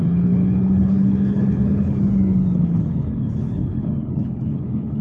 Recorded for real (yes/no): no